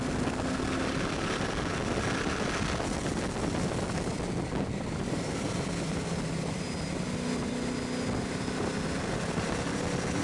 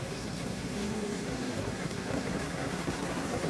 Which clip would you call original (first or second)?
first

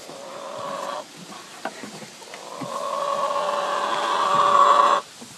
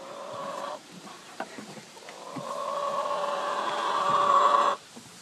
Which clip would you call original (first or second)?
first